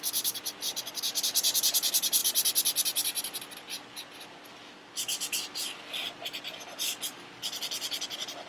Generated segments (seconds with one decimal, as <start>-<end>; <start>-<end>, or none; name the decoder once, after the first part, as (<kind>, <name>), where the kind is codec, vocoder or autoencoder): none